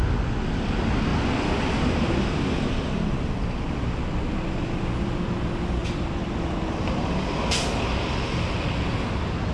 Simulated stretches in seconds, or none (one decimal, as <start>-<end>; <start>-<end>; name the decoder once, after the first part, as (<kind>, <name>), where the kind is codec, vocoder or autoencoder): 1.1-3.6 (vocoder, BigVGAN v2); 5.8-6.6